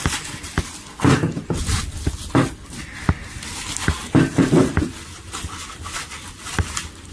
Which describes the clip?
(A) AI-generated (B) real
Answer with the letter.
B